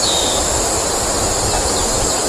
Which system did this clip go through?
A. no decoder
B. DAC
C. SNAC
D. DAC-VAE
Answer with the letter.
A